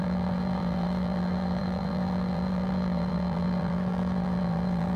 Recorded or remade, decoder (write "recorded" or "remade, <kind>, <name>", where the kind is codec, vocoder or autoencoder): remade, vocoder, BigVGAN v2